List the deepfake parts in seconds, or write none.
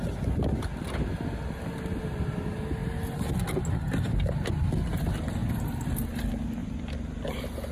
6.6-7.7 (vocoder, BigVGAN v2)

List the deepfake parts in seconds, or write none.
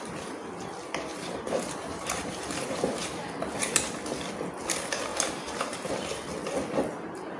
1.1-4.0 (vocoder, BigVGAN v2); 5.1-5.9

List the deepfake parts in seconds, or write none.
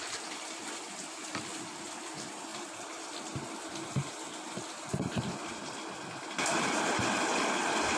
none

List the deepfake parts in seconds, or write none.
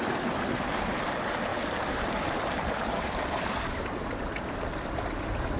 1.5-3.8 (vocoder, BigVGAN v2)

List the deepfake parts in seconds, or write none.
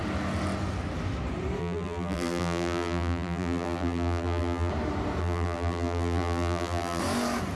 1.6-4.7 (vocoder, BigVGAN v2); 5.2-7.0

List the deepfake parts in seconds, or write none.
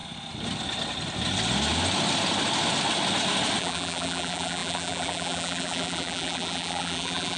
3.6-7.4 (vocoder, BigVGAN v2)